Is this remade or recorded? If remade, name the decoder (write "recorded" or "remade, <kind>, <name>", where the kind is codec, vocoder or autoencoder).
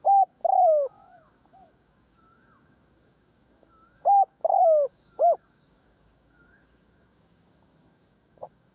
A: remade, codec, DAC